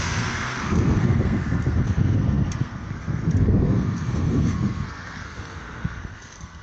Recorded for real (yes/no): no